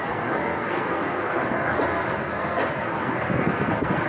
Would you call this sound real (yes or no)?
no